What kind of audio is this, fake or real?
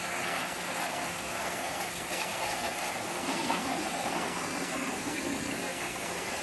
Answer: fake